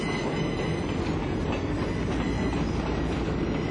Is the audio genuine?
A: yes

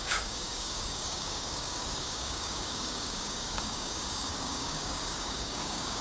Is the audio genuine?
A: no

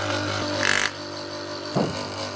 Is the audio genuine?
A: yes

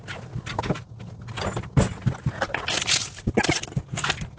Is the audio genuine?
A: yes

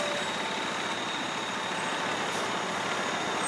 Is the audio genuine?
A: yes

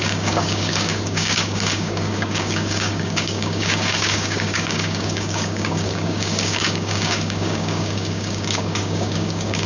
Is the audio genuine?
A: no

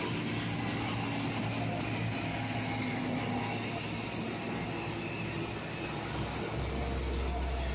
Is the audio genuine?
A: yes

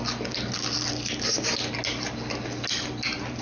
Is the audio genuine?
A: yes